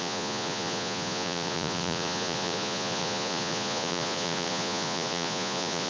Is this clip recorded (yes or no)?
no